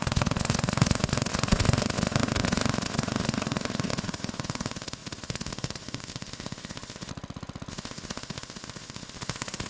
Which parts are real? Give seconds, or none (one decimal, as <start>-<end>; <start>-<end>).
7.1-7.7